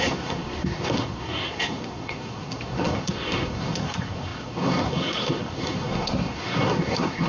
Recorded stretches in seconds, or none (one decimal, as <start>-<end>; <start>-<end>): none